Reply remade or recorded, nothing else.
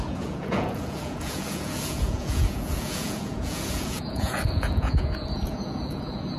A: remade